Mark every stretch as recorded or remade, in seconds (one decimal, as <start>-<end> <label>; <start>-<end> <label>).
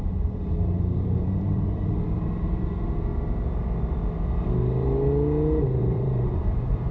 0.0-3.1 remade; 3.1-5.8 recorded; 5.8-6.9 remade